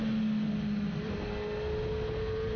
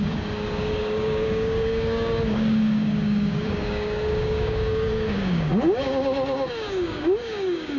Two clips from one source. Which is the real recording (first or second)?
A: first